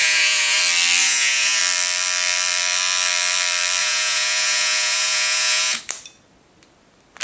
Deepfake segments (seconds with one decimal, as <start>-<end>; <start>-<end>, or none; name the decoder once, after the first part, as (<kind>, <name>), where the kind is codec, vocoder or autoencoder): 0.0-0.6 (vocoder, Vocos); 1.0-1.6; 3.8-5.8